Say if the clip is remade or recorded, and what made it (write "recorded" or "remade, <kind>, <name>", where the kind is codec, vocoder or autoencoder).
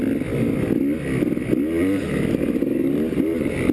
recorded